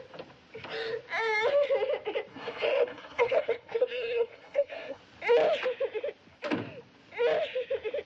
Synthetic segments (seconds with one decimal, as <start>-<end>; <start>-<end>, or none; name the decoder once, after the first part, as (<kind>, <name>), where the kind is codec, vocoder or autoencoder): 2.3-5.0 (codec, SNAC)